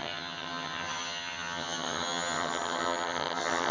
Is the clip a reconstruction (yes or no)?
yes